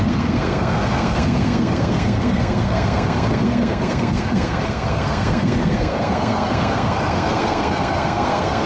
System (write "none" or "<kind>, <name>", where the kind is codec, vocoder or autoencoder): codec, SNAC